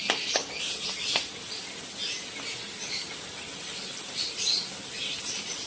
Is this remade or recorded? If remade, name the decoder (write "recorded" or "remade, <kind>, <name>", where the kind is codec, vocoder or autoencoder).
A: recorded